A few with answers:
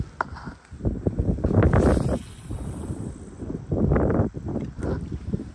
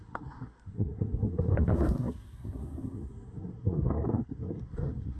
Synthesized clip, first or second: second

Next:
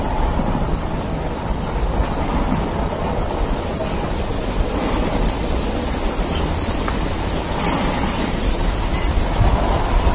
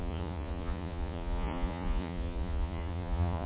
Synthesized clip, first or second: second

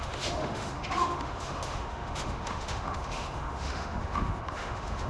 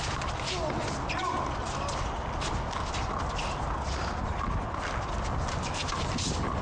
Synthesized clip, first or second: first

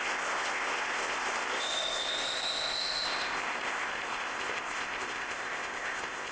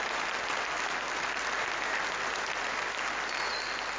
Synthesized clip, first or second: first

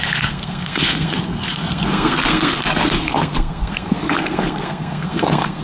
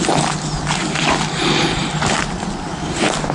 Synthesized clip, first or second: first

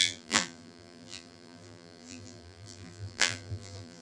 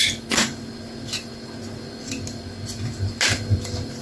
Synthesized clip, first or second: first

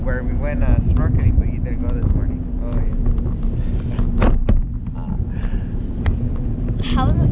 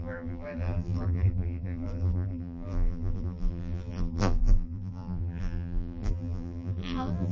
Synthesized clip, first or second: second